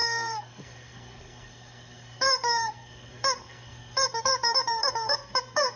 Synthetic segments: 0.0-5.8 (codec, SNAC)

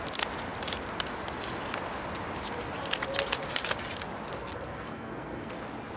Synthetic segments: 4.3-5.5 (codec, SNAC)

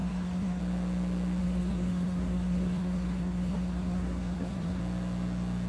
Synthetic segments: 0.0-0.6 (codec, SNAC); 1.4-4.8

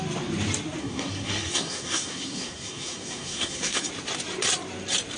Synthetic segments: 0.8-3.9 (codec, SNAC)

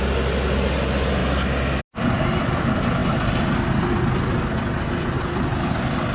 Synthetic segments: none

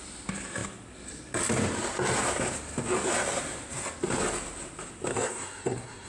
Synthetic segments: 5.1-6.1 (codec, SNAC)

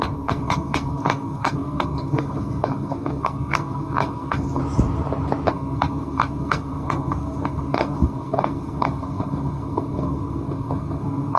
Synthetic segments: 0.0-4.6 (codec, SNAC); 5.5-11.4